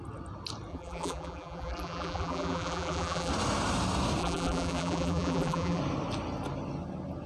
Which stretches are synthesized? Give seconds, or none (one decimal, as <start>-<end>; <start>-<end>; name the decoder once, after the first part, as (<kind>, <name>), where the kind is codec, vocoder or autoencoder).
0.7-3.3 (vocoder, BigVGAN v2); 4.2-5.8